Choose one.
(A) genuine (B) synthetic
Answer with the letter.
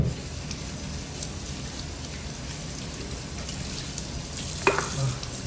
A